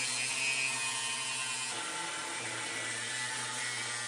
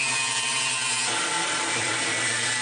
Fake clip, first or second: second